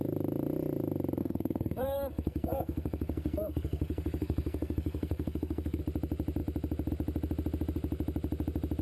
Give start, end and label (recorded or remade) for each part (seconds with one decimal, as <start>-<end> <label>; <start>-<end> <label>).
0.0-1.2 recorded; 1.2-5.8 remade; 5.8-8.8 recorded